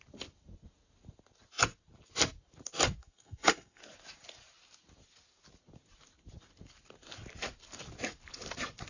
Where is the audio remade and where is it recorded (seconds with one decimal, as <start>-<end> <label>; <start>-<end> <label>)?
0.0-3.0 recorded; 3.0-3.8 remade; 3.8-8.9 recorded